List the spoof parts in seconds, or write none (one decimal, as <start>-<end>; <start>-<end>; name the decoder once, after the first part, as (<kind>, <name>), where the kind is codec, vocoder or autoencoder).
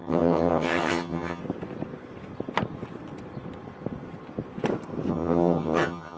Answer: 0.0-1.4 (vocoder, HiFi-GAN); 5.1-6.2